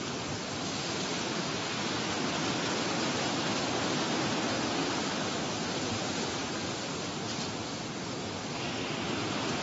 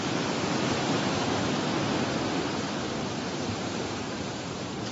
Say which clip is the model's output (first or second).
second